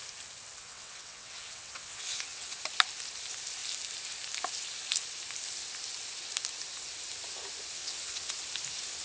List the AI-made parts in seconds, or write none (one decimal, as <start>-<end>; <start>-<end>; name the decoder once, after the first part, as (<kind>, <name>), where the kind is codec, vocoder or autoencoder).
0.6-2.6 (vocoder, WaveNeXt); 7.8-8.3